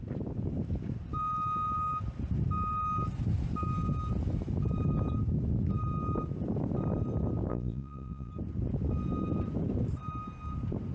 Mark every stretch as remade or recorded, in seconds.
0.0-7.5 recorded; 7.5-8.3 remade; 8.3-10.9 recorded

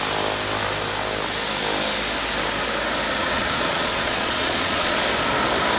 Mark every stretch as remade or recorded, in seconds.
0.0-3.2 recorded; 3.2-5.0 remade; 5.0-5.8 recorded

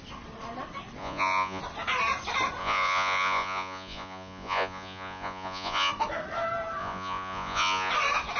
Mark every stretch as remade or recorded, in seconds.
0.0-1.0 recorded; 1.0-1.6 remade; 1.6-2.6 recorded; 2.6-5.9 remade; 5.9-6.8 recorded; 6.8-7.9 remade; 7.9-8.4 recorded